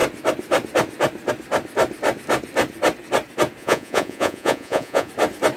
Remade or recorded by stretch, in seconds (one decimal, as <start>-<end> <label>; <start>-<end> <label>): 0.0-3.6 recorded; 3.6-5.1 remade; 5.1-5.6 recorded